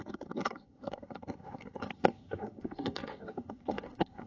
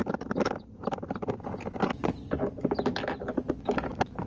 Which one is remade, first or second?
first